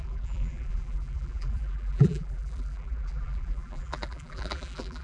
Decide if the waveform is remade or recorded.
remade